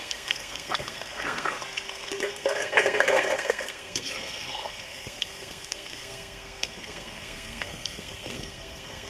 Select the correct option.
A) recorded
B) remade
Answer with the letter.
B